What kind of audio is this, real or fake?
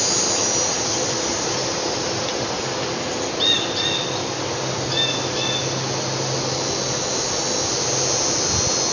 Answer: real